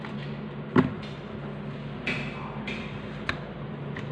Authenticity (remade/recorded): recorded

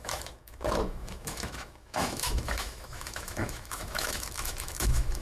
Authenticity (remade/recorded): remade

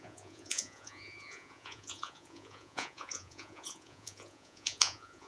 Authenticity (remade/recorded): remade